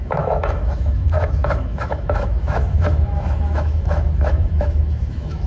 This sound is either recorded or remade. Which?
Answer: remade